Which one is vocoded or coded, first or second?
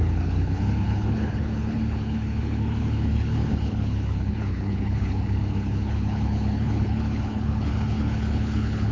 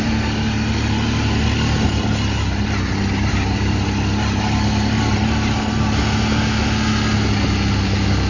first